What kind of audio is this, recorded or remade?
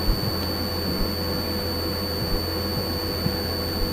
recorded